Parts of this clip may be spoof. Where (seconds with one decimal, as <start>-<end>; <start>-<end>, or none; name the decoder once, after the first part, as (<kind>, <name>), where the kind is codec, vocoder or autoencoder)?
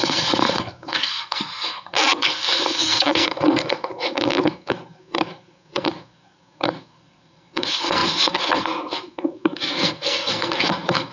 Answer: 0.0-11.1 (codec, SNAC)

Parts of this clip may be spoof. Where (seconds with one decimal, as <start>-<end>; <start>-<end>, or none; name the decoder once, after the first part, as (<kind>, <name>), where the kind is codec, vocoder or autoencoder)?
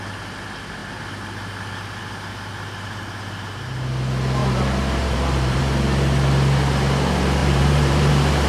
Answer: 4.4-5.6 (vocoder, BigVGAN v2); 7.4-8.1